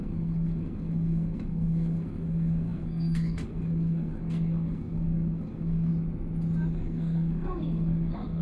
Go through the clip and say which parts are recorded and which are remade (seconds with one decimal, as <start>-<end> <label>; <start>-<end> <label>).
0.0-5.9 remade; 5.9-6.7 recorded; 6.7-8.4 remade